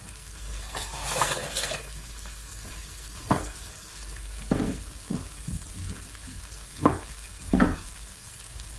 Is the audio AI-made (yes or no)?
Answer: yes